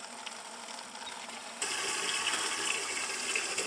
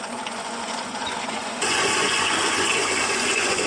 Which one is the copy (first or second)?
second